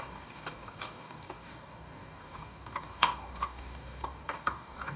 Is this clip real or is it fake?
fake